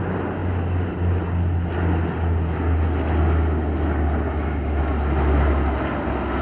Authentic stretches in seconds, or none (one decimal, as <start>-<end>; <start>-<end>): 0.0-6.4

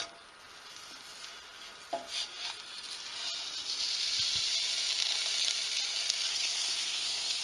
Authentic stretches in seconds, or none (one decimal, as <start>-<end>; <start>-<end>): 0.0-6.3

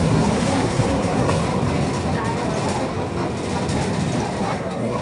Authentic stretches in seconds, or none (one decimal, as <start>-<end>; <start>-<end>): 1.4-4.4

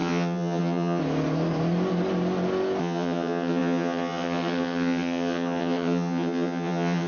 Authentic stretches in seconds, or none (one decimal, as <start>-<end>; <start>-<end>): 1.0-2.8

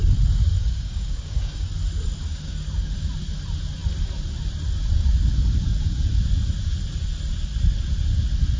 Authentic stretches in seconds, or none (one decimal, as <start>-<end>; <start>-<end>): 0.0-0.6; 1.7-2.2; 2.9-8.6

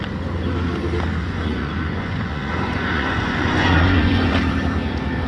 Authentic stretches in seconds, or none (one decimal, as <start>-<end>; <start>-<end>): 0.0-1.2; 4.4-5.3

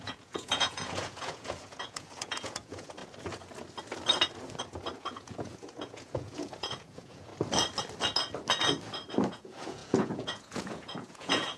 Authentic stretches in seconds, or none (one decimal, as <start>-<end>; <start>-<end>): 3.0-5.0; 7.3-9.3